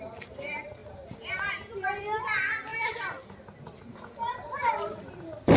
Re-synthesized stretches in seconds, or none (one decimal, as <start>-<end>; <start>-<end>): none

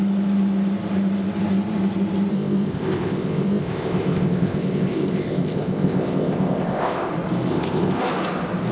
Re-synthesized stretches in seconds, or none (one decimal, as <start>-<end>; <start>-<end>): 2.3-7.1; 7.5-8.0

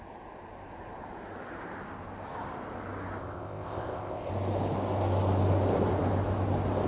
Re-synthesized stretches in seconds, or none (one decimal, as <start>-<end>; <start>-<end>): 3.2-4.3

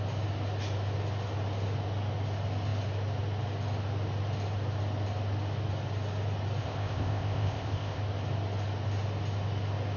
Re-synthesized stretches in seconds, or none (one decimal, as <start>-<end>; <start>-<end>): 6.6-8.0